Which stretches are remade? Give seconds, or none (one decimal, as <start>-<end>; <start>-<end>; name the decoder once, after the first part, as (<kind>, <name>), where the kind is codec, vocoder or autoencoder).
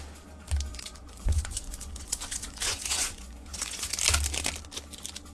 0.7-3.9 (vocoder, Vocos)